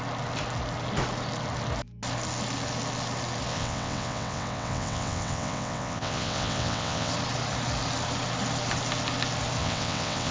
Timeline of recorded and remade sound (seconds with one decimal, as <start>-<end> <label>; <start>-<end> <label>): 0.0-3.5 recorded; 3.5-7.1 remade; 7.1-9.6 recorded; 9.6-10.3 remade